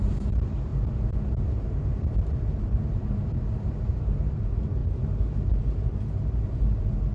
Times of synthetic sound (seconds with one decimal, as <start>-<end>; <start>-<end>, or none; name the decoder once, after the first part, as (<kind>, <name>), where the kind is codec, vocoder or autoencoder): 0.0-0.7 (vocoder, BigVGAN v2); 1.3-7.1